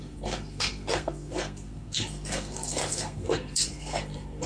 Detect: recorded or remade remade